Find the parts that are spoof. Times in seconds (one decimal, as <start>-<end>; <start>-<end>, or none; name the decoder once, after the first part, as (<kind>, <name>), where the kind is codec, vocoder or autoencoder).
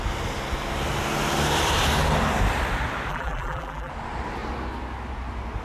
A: 3.1-3.9 (vocoder, BigVGAN v2)